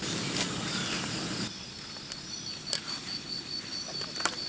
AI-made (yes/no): no